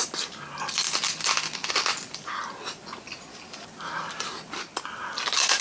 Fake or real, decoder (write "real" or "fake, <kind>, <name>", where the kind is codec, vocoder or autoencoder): real